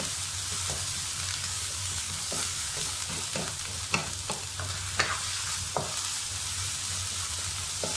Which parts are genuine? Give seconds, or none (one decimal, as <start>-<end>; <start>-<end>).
0.0-1.3; 3.1-8.0